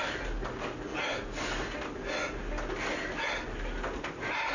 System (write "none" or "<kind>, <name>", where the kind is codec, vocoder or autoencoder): none